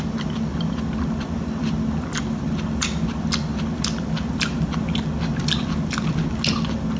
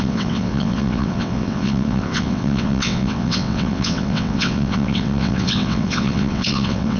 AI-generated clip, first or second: second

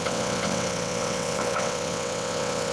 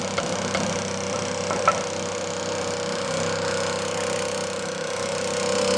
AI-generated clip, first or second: first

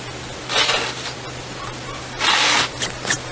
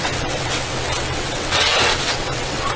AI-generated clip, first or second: second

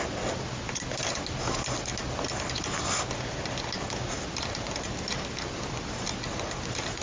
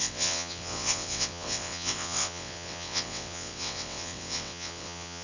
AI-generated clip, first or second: second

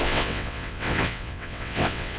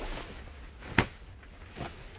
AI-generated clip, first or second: first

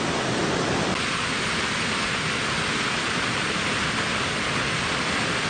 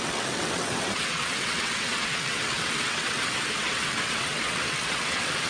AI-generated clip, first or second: second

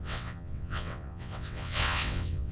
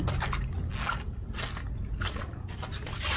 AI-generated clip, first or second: first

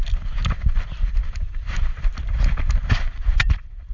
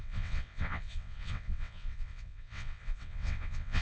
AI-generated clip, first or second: second